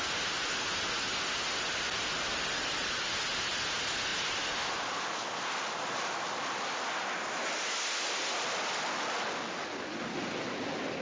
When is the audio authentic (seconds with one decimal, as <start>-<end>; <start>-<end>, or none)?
0.0-2.3; 3.1-11.0